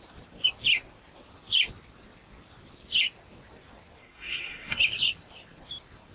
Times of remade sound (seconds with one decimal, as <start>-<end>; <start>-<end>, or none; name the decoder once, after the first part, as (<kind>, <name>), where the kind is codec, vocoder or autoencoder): 4.0-4.8 (codec, SNAC)